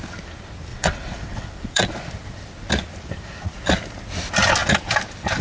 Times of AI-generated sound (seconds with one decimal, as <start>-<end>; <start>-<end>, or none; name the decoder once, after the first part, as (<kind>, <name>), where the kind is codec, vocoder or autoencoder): 0.7-1.9 (vocoder, WaveNeXt)